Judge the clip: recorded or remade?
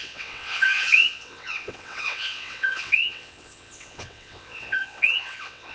remade